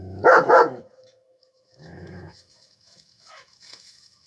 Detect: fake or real fake